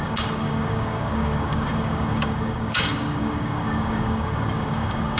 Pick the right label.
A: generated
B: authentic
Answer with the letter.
A